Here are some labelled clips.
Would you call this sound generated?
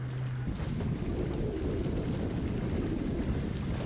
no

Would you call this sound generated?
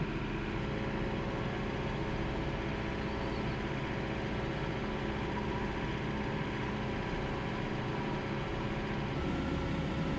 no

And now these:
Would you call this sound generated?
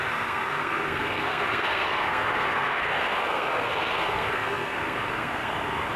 yes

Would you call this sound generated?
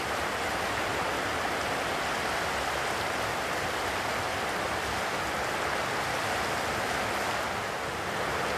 no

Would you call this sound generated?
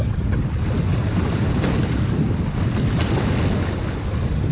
no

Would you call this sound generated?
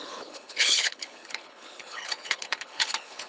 yes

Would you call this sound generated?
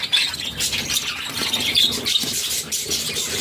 no